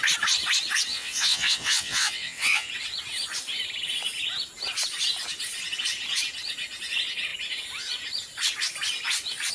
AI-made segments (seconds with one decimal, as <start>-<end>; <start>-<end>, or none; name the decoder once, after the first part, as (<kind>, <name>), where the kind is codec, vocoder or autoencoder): 0.9-2.7 (vocoder, WaveNeXt)